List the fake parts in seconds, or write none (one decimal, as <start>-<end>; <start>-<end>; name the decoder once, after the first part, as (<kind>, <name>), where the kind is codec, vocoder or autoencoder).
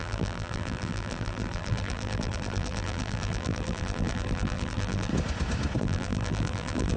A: 0.0-5.1 (vocoder, BigVGAN v2); 5.8-7.0